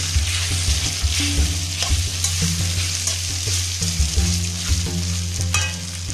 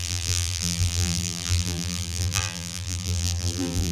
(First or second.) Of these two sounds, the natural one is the first